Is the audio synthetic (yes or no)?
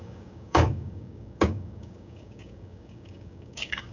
yes